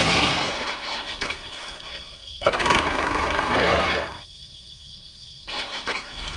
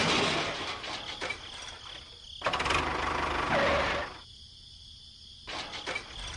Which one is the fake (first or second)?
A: first